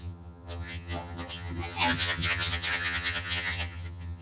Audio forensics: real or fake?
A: fake